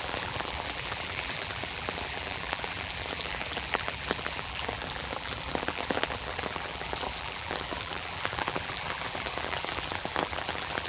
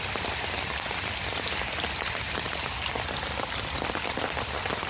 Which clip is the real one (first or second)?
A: second